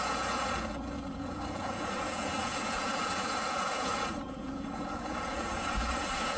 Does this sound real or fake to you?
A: fake